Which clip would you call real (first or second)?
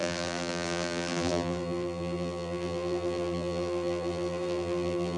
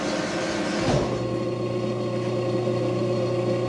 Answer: second